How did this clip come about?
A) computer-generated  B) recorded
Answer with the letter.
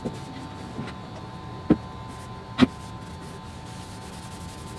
B